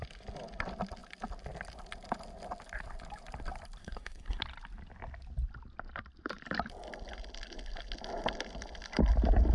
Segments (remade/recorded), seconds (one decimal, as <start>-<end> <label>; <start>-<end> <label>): 0.0-3.8 recorded; 3.8-4.4 remade; 4.4-9.5 recorded